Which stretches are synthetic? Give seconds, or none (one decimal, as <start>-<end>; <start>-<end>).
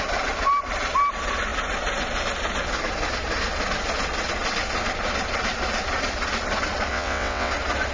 6.9-7.5